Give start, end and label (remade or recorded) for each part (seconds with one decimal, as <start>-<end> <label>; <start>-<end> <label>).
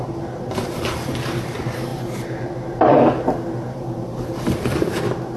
0.0-5.4 remade